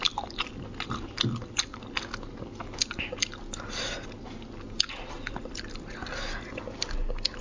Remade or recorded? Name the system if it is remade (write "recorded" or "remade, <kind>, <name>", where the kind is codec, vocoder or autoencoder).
recorded